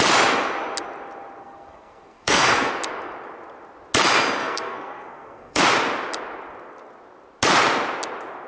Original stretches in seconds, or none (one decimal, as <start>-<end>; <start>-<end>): 0.0-1.4; 2.7-4.4; 5.6-8.5